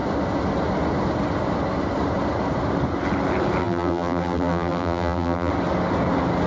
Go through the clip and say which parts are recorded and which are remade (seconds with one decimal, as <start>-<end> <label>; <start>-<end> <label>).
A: 0.0-3.6 recorded; 3.6-5.5 remade; 5.5-6.5 recorded